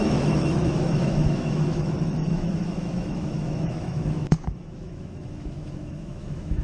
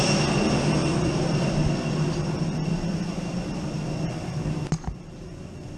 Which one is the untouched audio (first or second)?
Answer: second